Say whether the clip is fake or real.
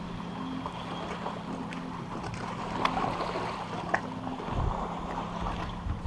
real